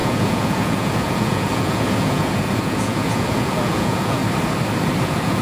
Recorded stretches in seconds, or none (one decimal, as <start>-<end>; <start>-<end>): 4.2-5.0